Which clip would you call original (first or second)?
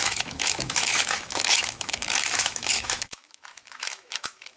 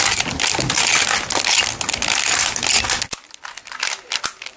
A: second